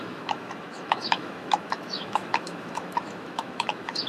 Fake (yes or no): yes